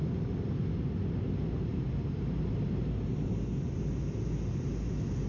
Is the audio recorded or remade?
recorded